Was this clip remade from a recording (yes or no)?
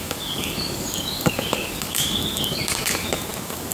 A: yes